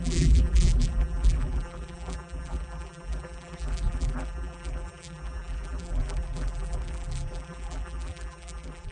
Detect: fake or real fake